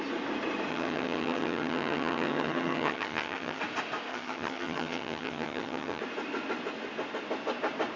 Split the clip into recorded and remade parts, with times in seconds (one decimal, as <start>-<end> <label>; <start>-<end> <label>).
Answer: 0.0-0.7 recorded; 0.7-3.6 remade; 3.6-4.1 recorded; 4.1-6.0 remade; 6.0-8.0 recorded